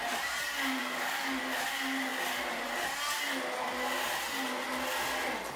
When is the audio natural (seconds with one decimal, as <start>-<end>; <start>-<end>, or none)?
0.0-0.8; 1.4-5.6